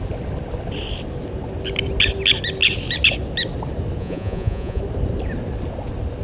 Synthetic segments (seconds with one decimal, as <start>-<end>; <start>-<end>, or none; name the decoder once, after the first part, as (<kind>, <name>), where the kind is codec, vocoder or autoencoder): 4.0-4.8 (vocoder, Vocos)